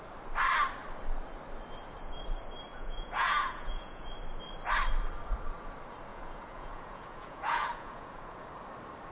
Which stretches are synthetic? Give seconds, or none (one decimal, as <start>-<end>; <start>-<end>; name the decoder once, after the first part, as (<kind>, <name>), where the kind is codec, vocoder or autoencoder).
2.7-4.1 (vocoder, Vocos); 6.1-8.5